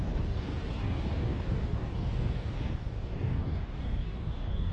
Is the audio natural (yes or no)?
no